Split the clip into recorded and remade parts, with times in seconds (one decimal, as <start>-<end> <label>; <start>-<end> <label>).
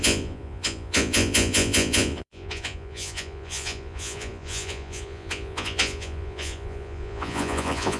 0.0-8.0 remade